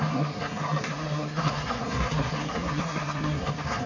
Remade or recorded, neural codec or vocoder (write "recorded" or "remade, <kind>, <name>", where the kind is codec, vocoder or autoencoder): remade, codec, SNAC